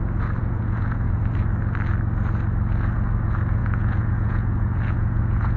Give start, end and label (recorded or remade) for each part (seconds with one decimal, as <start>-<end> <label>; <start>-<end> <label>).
0.0-0.4 recorded; 0.4-1.2 remade; 1.2-3.6 recorded; 3.6-5.6 remade

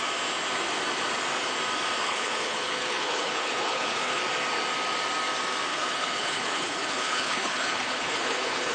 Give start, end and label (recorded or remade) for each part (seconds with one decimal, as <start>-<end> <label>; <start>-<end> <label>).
0.0-2.0 recorded; 2.0-4.2 remade; 4.2-5.7 recorded; 5.7-8.7 remade

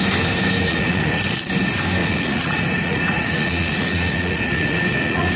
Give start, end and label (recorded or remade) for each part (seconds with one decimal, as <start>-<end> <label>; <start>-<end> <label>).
0.0-0.7 recorded; 0.7-1.2 remade; 1.2-2.0 recorded; 2.0-5.4 remade

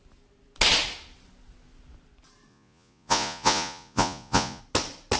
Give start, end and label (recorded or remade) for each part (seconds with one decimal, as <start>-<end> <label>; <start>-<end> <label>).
0.0-2.5 recorded; 2.5-4.6 remade; 4.6-5.2 recorded

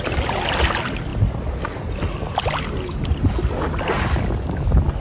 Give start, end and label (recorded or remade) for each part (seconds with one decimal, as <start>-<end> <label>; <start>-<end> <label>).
0.0-5.0 recorded

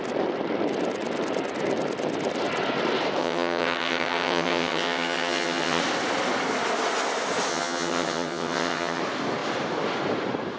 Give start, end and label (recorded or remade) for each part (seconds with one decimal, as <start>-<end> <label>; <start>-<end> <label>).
0.0-3.2 recorded; 3.2-5.8 remade; 5.8-7.5 recorded; 7.5-9.0 remade; 9.0-10.6 recorded

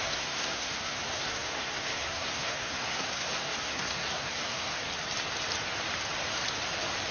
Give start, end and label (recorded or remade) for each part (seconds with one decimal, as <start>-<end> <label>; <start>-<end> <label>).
0.0-4.9 remade; 4.9-7.1 recorded